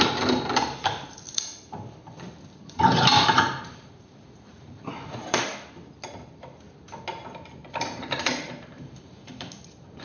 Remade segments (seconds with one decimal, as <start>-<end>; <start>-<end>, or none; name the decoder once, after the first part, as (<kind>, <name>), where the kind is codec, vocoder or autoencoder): 0.0-1.5 (vocoder, BigVGAN v2); 2.7-5.5; 7.6-10.0